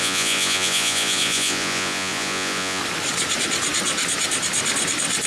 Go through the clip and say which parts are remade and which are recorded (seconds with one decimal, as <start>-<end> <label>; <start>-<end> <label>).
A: 0.0-2.8 remade; 2.8-5.3 recorded